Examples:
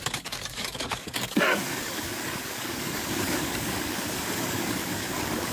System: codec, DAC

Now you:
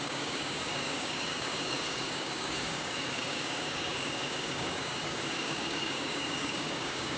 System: codec, DAC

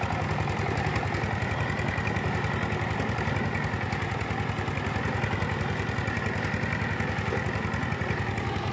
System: none